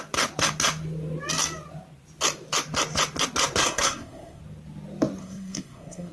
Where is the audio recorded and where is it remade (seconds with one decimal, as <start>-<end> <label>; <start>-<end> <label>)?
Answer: 0.0-3.6 recorded; 3.6-4.4 remade; 4.4-5.2 recorded; 5.2-6.1 remade